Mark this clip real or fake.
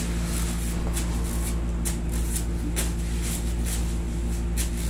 real